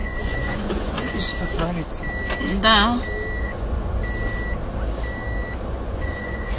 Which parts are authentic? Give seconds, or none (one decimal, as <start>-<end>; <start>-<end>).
1.3-3.4; 4.0-5.7